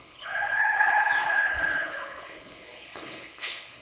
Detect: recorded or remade remade